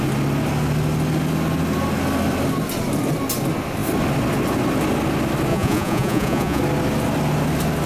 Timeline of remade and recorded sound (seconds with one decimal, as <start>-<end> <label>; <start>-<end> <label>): 0.0-5.5 recorded; 5.5-6.6 remade; 6.6-7.9 recorded